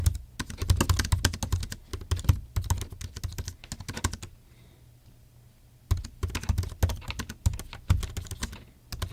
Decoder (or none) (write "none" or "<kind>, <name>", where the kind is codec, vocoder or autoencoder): none